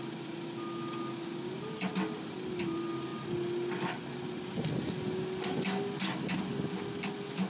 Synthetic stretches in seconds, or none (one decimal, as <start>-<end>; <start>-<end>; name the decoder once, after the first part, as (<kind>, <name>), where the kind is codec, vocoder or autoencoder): none